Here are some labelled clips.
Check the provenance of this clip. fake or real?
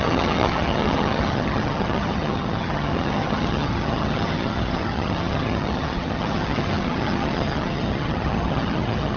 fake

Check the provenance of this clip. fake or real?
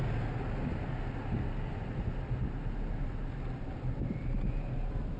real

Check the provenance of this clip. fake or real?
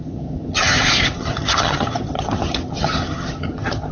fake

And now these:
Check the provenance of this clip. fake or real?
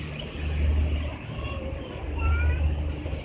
real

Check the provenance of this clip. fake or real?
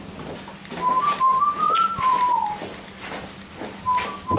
real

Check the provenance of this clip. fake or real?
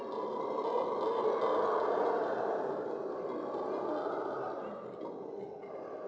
real